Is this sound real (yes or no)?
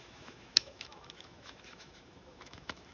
no